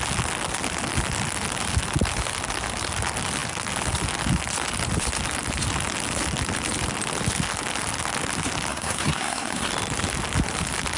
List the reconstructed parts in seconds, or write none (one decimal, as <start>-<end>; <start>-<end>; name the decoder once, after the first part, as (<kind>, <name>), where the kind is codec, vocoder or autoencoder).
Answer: 8.7-9.7 (codec, SNAC)